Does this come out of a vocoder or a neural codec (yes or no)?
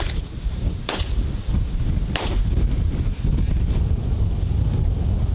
no